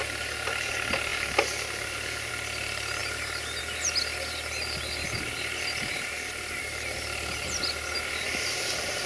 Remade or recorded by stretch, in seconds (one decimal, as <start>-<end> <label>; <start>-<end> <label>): 0.0-9.1 recorded